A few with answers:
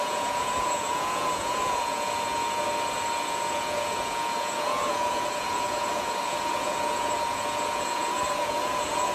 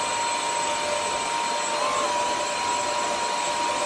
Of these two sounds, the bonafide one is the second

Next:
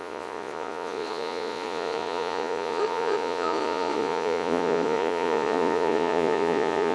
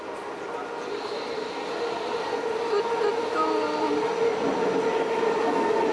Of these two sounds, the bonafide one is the second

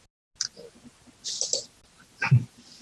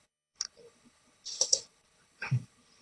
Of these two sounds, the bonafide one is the first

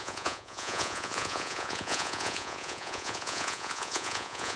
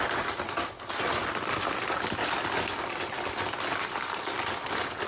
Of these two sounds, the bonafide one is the second